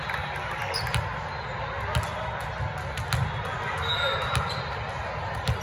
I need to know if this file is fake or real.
real